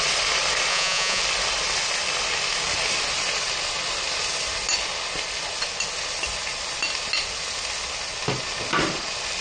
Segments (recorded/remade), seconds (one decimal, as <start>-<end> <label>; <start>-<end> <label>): 0.0-0.7 recorded; 0.7-1.2 remade; 1.2-9.4 recorded